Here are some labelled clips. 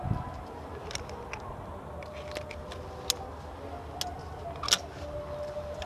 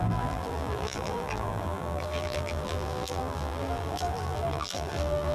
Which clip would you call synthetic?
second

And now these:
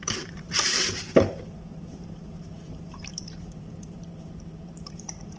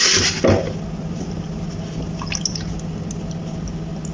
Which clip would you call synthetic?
first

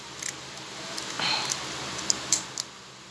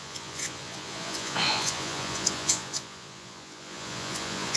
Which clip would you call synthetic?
second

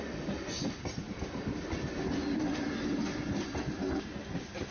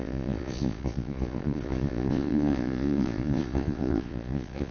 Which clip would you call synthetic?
second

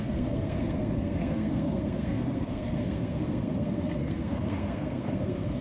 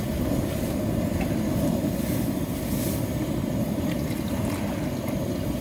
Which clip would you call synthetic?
first